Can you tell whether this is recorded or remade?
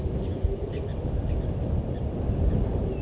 remade